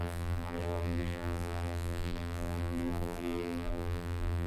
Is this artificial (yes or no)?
yes